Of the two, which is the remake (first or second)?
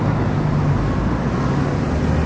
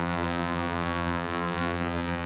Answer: second